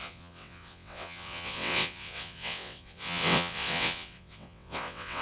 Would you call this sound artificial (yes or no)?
yes